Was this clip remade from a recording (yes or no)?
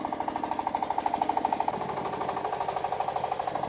no